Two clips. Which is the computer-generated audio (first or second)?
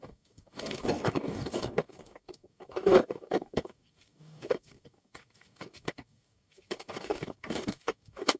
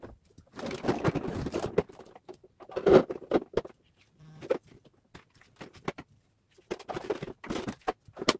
first